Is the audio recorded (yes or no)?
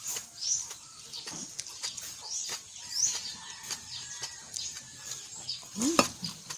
yes